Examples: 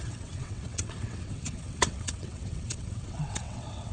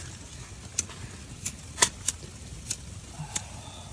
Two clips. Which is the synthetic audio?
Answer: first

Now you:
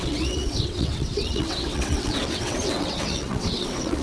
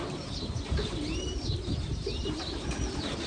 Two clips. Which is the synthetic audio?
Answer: first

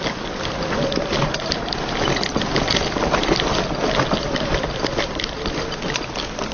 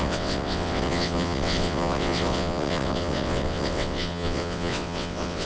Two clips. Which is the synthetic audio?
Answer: second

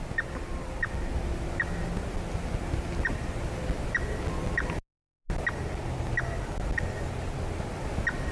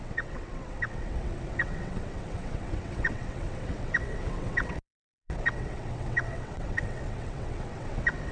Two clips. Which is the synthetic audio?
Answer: second